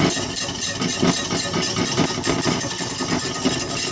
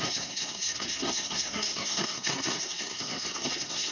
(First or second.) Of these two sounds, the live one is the first